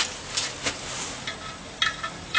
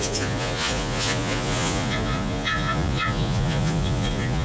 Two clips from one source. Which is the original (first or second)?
first